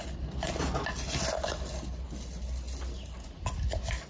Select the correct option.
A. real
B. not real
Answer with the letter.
A